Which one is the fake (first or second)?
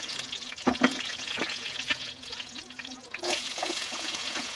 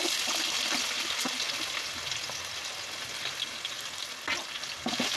first